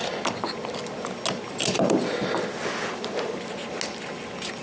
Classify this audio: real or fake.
real